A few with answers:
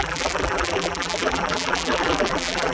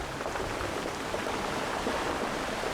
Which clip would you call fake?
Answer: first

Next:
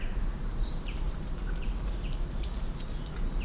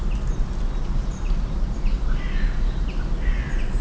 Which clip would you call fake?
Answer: first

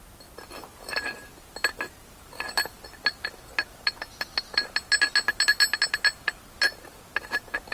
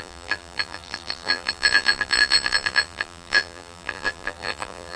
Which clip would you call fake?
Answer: second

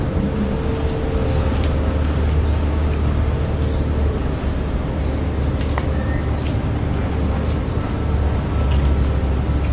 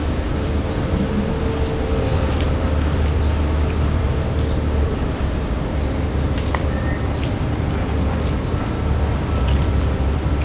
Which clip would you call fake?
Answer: second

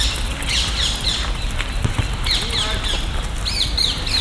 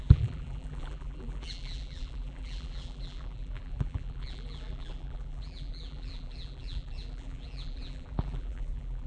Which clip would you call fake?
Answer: second